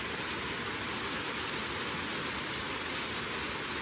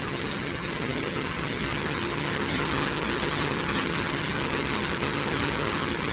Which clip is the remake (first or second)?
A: second